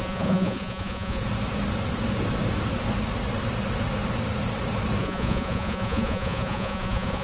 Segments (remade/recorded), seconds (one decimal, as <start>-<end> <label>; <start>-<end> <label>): 0.0-1.2 remade; 1.2-5.0 recorded; 5.0-7.2 remade